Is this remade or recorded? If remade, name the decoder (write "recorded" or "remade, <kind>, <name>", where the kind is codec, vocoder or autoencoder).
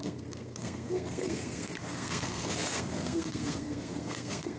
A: remade, codec, SNAC